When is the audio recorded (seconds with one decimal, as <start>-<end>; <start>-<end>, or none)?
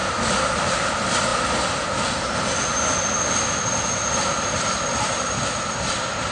0.0-6.3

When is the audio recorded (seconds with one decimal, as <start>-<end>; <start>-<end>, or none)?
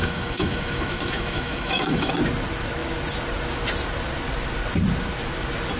2.1-5.8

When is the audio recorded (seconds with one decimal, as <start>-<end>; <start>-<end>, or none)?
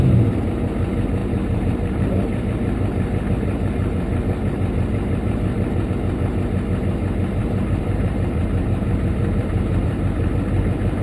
0.0-1.2; 5.9-7.4; 10.3-11.0